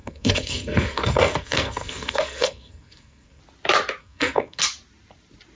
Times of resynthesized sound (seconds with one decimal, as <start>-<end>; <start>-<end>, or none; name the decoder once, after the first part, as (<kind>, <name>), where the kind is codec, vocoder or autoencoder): 0.0-3.4 (codec, SNAC); 4.0-4.6